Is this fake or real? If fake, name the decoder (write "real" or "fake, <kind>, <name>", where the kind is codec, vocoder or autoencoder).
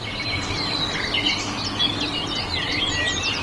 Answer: real